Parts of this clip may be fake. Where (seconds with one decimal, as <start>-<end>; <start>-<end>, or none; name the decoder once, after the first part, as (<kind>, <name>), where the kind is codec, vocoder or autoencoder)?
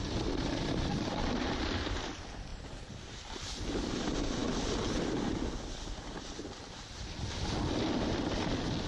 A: none